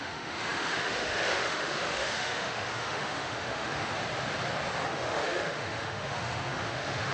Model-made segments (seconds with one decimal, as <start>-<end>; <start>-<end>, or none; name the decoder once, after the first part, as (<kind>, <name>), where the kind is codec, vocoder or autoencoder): 0.0-3.9 (autoencoder, DAC-VAE); 4.9-7.1